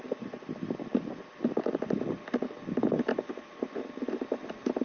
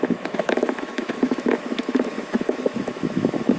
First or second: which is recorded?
first